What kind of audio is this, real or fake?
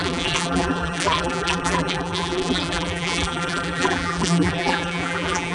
fake